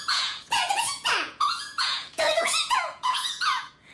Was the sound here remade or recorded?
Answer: remade